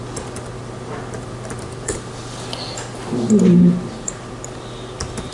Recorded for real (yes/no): yes